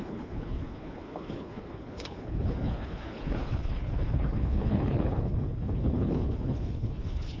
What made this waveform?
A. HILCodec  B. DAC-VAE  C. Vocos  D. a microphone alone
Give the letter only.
A